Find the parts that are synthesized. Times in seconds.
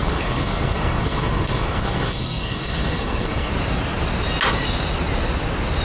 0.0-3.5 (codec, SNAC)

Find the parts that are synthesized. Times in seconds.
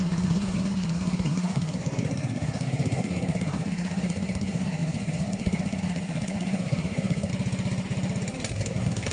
0.0-7.3 (codec, SNAC); 8.5-9.1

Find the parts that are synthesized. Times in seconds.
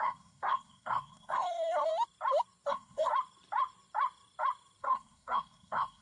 0.0-1.9 (codec, SNAC); 2.7-3.1; 4.8-6.0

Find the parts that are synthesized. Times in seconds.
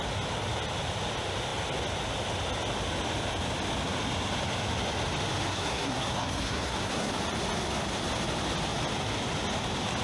5.5-7.1 (codec, SNAC)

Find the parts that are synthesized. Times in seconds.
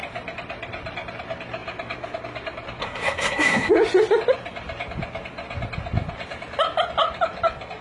2.8-3.7 (codec, SNAC)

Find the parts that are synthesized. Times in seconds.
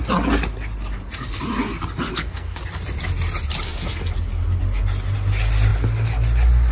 2.1-2.6 (codec, SNAC)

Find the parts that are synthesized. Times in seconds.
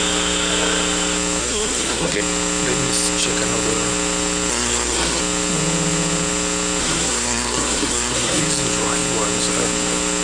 1.4-2.2 (codec, SNAC); 4.5-5.2; 6.8-8.4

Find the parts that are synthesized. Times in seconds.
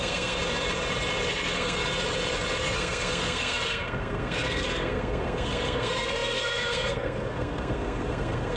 0.0-0.4 (codec, SNAC); 1.3-1.8; 2.6-8.6